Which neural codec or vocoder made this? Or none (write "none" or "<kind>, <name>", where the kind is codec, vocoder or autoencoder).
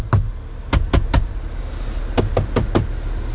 none